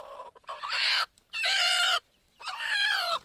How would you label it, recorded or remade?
remade